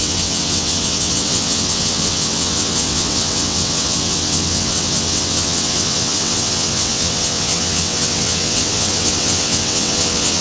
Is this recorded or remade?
remade